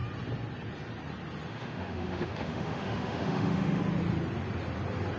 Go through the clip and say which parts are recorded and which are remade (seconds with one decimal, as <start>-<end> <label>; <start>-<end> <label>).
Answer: 0.0-1.5 recorded; 1.5-3.8 remade; 3.8-5.2 recorded